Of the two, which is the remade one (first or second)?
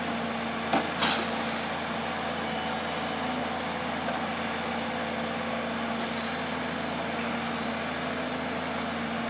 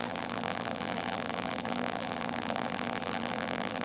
second